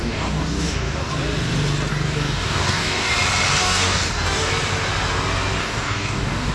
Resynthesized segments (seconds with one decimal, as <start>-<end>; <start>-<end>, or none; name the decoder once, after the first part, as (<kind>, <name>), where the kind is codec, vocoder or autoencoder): 0.0-1.1 (codec, DAC); 1.9-3.1; 3.6-4.5; 5.6-6.5